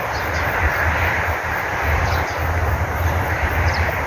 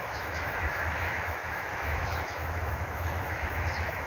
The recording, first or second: first